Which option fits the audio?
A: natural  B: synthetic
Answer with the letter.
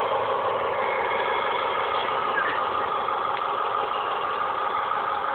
A